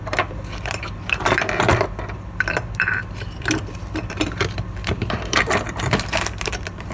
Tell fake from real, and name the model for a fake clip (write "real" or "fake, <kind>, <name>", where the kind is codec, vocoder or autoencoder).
fake, vocoder, BigVGAN v2